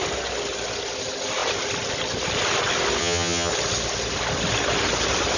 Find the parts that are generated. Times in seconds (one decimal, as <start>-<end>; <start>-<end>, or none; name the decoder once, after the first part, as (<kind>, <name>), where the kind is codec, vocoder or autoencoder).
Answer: 3.0-3.5 (vocoder, HiFi-GAN)